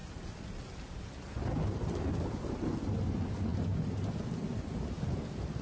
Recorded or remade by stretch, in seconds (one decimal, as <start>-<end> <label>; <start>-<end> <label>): 0.0-5.6 recorded